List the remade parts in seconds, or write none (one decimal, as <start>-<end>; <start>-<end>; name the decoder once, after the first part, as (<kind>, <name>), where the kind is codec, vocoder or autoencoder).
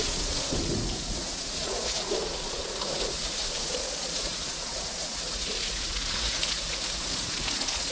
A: 0.0-7.9 (vocoder, Vocos)